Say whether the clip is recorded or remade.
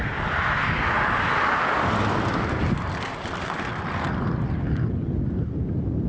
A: recorded